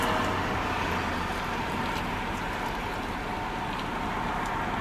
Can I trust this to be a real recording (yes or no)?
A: yes